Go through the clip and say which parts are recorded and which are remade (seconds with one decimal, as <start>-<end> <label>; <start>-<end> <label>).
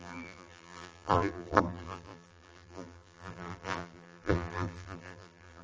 0.0-5.6 remade